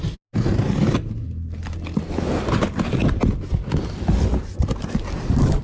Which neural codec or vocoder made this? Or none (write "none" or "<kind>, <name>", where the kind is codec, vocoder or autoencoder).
none